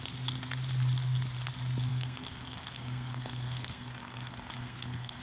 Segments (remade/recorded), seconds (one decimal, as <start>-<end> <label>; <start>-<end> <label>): 0.0-1.9 recorded; 1.9-5.2 remade